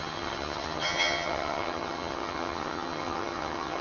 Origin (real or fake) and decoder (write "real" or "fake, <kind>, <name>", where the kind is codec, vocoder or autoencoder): fake, vocoder, HiFi-GAN